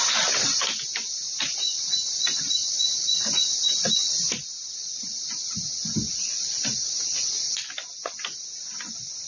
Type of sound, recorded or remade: recorded